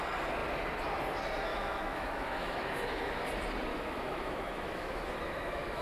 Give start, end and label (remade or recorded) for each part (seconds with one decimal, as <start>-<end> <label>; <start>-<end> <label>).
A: 0.0-1.5 recorded; 1.5-3.3 remade; 3.3-3.7 recorded; 3.7-5.8 remade